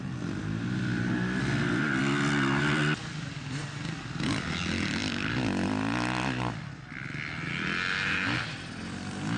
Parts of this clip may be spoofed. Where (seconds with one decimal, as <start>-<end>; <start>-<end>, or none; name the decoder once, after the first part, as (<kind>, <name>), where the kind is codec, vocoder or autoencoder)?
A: none